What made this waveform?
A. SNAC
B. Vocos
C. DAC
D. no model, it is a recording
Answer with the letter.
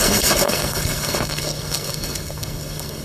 A